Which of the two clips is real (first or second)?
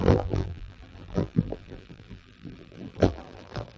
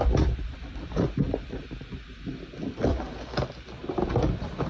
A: second